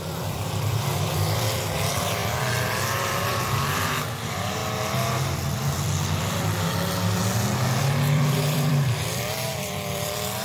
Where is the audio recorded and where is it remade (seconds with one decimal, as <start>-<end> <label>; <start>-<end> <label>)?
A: 0.0-4.6 remade; 4.6-7.8 recorded; 7.8-10.4 remade